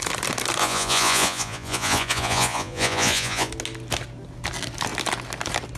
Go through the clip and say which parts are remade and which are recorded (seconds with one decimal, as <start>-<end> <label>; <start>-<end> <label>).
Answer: 0.0-0.6 recorded; 0.6-3.5 remade; 3.5-5.8 recorded